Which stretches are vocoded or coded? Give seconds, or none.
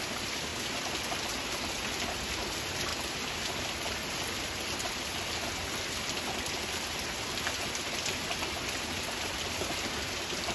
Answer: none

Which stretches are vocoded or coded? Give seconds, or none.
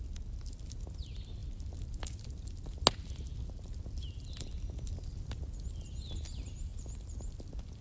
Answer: none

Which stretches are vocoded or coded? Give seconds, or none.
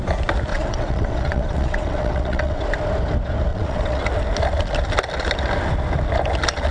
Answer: 0.5-2.6 (vocoder, WaveNeXt); 3.5-4.0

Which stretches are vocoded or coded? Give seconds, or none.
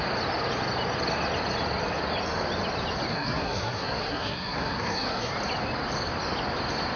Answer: 3.1-5.3 (codec, SNAC)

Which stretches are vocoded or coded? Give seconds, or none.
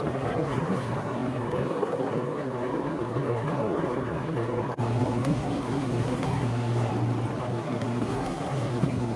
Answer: 0.0-6.9 (codec, SNAC); 7.4-9.2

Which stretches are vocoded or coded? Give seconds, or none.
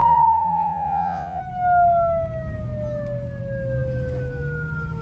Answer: 0.0-1.4 (vocoder, Vocos)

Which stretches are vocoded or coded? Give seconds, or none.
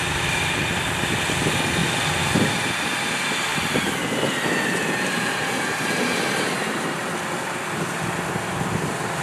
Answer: none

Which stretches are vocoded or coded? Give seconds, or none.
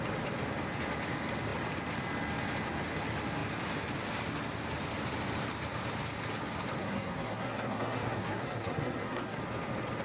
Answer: 6.8-9.4 (codec, SNAC)